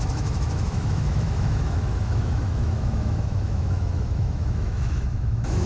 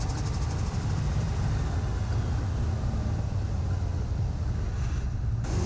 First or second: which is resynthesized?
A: first